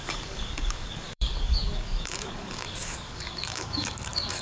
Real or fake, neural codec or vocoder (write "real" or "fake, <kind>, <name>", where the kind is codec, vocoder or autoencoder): fake, codec, DAC